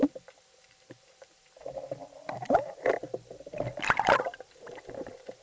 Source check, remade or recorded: recorded